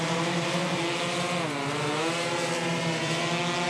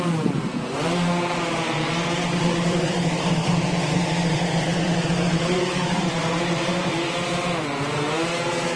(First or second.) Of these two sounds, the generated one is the second